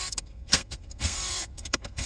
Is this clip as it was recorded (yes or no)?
no